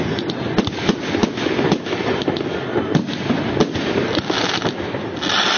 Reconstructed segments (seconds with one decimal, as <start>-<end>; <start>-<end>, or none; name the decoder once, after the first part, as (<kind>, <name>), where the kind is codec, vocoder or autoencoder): none